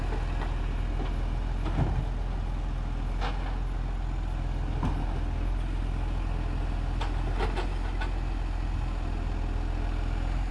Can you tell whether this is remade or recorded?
recorded